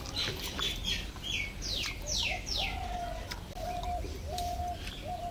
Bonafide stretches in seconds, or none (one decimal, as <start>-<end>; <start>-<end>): 0.0-0.8; 2.5-5.3